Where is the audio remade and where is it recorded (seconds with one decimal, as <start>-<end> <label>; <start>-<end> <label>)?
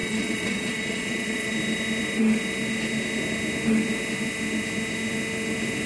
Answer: 0.0-1.5 remade; 1.5-5.9 recorded